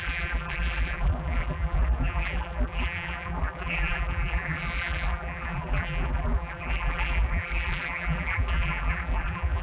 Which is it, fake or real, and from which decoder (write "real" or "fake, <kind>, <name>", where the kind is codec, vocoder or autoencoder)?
fake, vocoder, BigVGAN v2